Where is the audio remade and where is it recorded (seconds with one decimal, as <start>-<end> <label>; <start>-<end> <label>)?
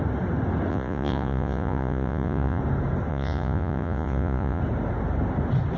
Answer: 0.0-0.7 recorded; 0.7-2.6 remade; 2.6-3.1 recorded; 3.1-4.6 remade; 4.6-5.8 recorded